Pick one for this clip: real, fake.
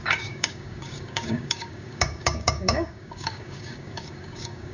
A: fake